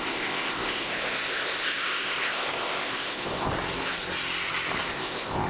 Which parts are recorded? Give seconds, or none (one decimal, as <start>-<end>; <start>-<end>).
3.5-4.9